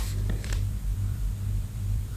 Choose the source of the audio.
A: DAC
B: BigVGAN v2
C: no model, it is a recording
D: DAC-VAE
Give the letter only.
B